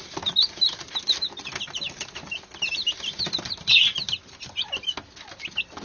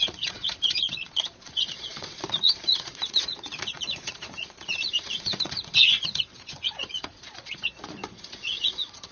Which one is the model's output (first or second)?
second